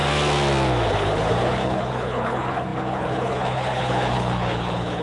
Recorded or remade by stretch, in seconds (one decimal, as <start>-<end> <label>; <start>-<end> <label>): 0.0-0.9 recorded; 0.9-5.0 remade